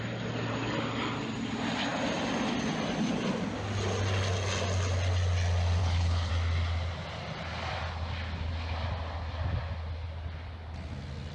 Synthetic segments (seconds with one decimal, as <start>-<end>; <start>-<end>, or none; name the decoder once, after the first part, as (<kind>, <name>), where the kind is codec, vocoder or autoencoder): 5.8-6.3 (codec, HILCodec)